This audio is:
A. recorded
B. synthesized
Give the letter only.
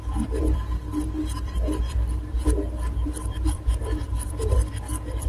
B